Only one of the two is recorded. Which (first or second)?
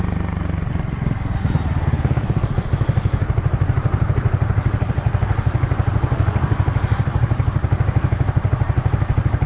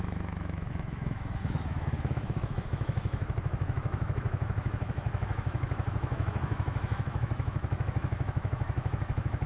first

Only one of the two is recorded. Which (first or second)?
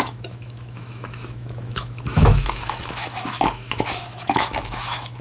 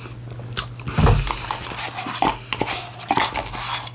second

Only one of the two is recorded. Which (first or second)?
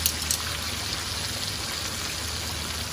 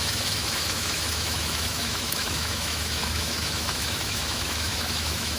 first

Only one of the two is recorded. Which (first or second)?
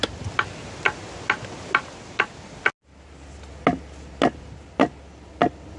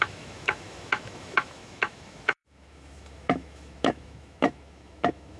first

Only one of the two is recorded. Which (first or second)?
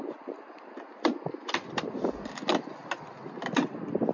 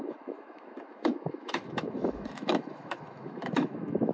first